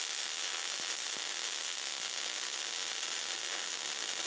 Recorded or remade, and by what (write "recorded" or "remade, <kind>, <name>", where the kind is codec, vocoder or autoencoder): recorded